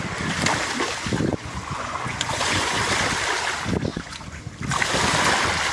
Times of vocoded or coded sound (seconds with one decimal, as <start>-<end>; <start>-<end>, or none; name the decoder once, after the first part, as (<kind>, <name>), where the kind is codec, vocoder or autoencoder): 1.3-2.8 (vocoder, Vocos); 3.9-4.4